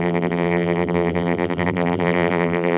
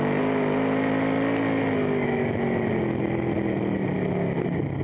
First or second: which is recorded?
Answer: second